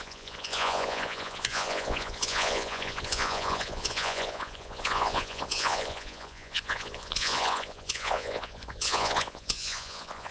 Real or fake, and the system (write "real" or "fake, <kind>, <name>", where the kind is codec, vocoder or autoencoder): fake, vocoder, Vocos